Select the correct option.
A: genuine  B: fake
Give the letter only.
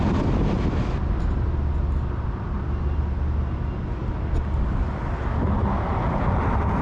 A